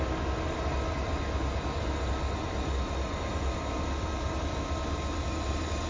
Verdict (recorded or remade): recorded